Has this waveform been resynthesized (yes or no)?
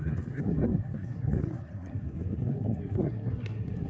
yes